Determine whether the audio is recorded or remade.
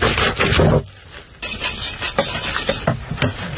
recorded